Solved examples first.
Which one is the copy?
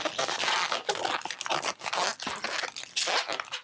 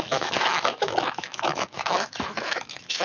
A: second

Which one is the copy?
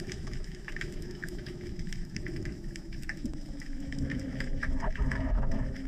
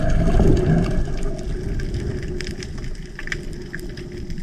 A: first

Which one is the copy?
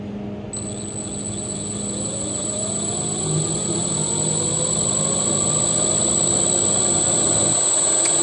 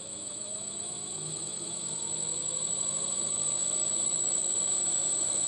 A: second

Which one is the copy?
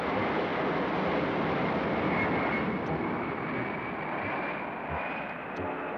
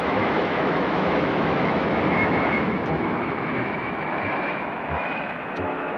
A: second